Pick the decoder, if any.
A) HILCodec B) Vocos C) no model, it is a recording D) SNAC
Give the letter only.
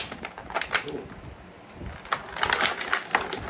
C